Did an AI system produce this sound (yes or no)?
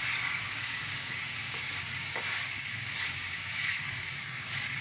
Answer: yes